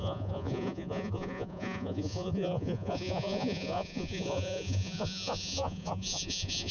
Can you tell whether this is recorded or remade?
remade